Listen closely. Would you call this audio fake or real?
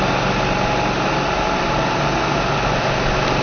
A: real